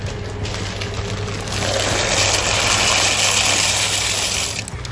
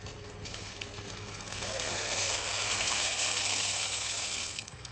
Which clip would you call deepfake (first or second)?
second